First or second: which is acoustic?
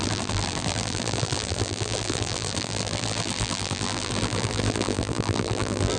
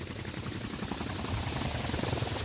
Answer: second